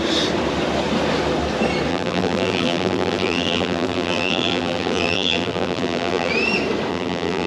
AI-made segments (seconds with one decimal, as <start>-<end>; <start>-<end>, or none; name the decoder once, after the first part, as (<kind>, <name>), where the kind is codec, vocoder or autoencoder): 1.9-6.3 (vocoder, BigVGAN v2); 6.9-7.5